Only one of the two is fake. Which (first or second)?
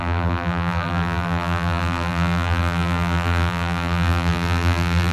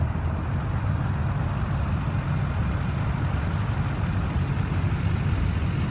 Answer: first